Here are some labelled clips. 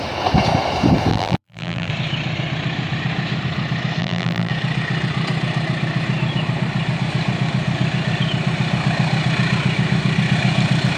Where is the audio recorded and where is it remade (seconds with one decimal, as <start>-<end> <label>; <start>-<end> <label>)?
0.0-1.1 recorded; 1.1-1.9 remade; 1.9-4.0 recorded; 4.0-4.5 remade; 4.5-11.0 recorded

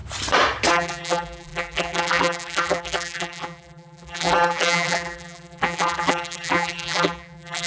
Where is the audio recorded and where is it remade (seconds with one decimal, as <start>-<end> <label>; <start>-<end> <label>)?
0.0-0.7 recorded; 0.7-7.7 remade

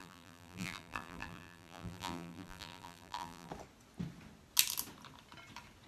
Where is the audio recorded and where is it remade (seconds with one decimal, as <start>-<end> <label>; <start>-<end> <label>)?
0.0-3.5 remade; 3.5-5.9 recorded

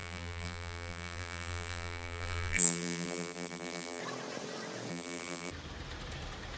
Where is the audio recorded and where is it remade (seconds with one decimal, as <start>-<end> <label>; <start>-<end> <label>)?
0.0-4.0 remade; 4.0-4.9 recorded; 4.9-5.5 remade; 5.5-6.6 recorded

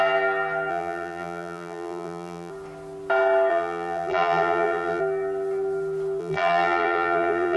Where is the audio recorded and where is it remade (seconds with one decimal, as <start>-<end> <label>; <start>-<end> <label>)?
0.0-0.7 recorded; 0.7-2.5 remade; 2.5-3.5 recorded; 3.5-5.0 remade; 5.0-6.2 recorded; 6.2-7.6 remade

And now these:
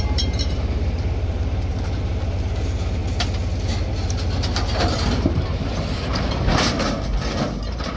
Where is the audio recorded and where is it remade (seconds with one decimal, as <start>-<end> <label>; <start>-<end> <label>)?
0.0-3.0 remade; 3.0-4.7 recorded; 4.7-8.0 remade

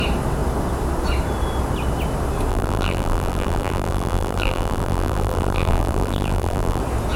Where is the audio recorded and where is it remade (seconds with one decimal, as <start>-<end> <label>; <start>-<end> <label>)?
0.0-2.5 recorded; 2.5-6.8 remade; 6.8-7.2 recorded

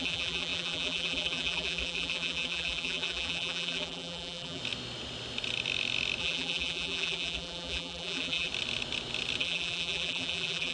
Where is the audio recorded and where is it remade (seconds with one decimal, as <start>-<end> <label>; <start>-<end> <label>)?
0.0-4.6 remade; 4.6-6.2 recorded; 6.2-8.5 remade; 8.5-9.4 recorded; 9.4-10.7 remade